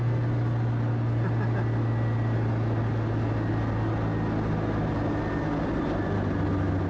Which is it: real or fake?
real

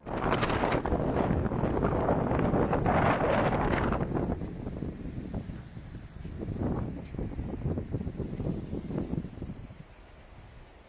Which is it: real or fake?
real